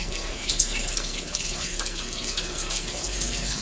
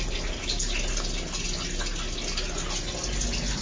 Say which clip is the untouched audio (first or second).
second